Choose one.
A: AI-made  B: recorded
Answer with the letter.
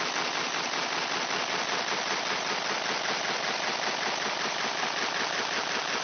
B